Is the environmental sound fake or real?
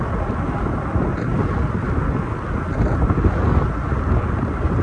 real